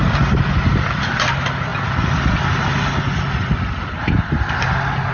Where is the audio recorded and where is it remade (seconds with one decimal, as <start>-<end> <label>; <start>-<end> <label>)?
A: 0.0-1.7 remade; 1.7-5.1 recorded